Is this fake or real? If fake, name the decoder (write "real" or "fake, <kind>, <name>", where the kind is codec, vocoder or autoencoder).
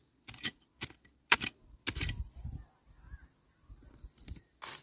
real